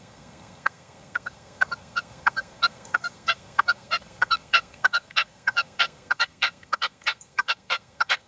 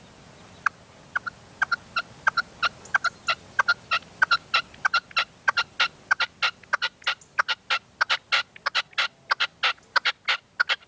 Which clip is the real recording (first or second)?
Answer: second